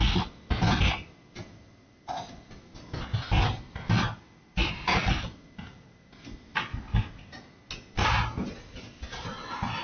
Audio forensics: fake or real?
real